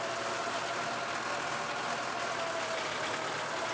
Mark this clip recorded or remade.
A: recorded